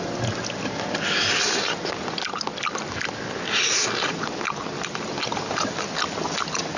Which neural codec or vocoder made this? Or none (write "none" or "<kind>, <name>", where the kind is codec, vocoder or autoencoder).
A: none